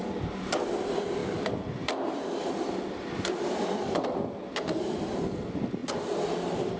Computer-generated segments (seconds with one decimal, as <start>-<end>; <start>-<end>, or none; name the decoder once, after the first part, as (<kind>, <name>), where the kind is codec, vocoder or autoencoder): 0.0-5.8 (vocoder, BigVGAN v2)